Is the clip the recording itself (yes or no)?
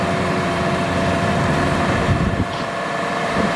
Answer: no